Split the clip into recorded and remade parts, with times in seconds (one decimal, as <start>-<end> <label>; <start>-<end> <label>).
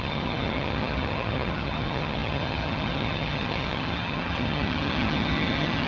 0.0-5.9 remade